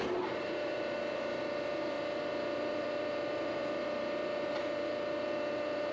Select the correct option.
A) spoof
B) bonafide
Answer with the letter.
A